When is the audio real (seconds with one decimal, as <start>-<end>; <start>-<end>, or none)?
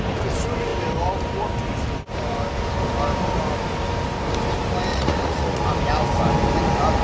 0.0-4.9; 5.6-7.0